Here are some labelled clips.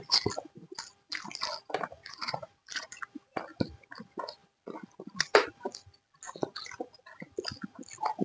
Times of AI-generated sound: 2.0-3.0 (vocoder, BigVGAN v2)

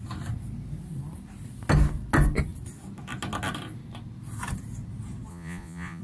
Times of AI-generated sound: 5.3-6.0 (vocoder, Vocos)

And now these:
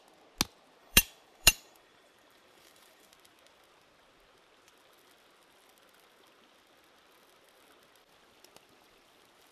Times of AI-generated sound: 0.8-3.1 (vocoder, BigVGAN v2)

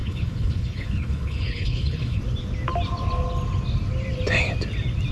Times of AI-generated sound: 0.0-2.2 (codec, HILCodec)

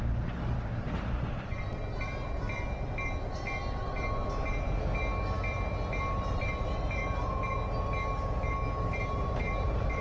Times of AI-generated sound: 0.0-1.8 (vocoder, BigVGAN v2); 6.3-7.0; 9.1-10.0